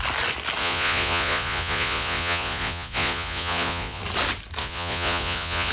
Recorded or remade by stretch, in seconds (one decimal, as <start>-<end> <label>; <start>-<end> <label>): 0.0-0.6 recorded; 0.6-4.0 remade; 4.0-4.6 recorded; 4.6-5.7 remade